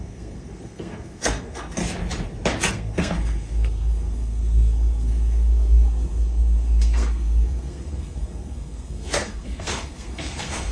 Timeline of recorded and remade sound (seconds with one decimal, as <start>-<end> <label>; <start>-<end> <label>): 0.0-1.8 remade; 1.8-2.7 recorded; 2.7-10.7 remade